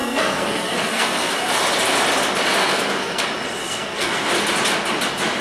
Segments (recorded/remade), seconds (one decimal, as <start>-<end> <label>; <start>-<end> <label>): 0.0-1.3 remade; 1.3-2.6 recorded; 2.6-3.2 remade; 3.2-3.6 recorded; 3.6-4.3 remade; 4.3-5.4 recorded